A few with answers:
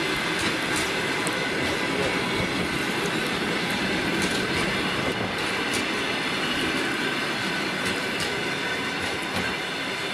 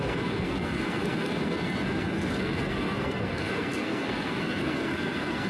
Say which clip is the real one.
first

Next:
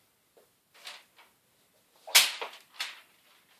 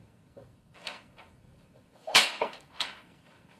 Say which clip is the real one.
first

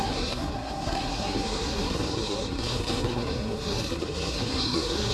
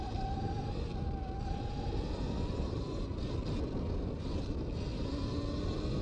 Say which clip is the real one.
second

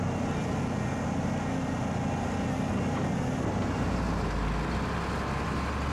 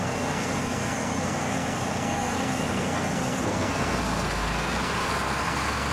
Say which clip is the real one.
first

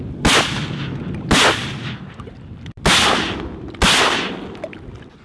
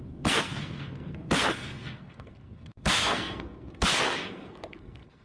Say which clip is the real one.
first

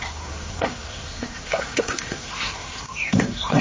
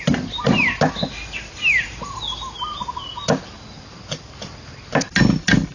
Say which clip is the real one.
second